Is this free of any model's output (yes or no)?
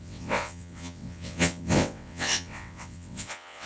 no